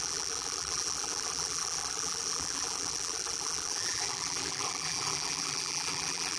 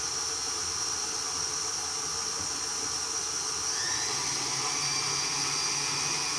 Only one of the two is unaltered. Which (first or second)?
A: second